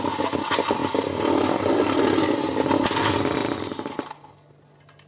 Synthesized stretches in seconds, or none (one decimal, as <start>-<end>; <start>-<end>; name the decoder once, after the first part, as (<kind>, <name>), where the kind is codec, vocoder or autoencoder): 3.4-3.9 (vocoder, BigVGAN v2)